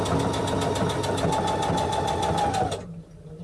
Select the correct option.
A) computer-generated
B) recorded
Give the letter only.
B